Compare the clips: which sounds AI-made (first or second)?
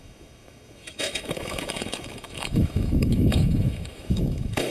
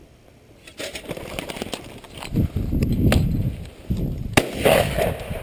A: first